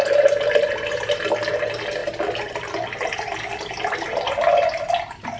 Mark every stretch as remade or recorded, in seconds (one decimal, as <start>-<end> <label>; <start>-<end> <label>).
0.0-5.4 recorded